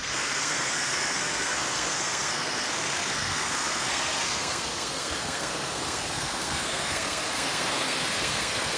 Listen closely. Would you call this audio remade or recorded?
remade